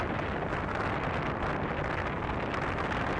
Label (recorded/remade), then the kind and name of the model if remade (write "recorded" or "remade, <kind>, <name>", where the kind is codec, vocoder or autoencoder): recorded